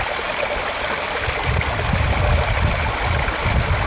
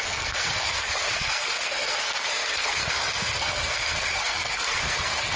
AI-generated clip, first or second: second